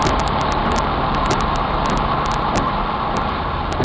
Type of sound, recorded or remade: remade